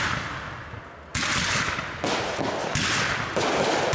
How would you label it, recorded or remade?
recorded